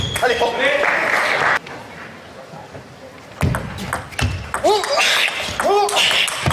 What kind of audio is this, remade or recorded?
recorded